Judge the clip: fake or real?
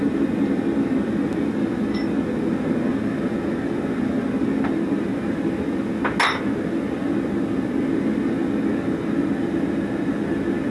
real